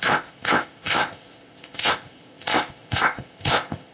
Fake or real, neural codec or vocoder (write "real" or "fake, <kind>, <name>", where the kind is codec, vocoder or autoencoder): fake, codec, ZipCodec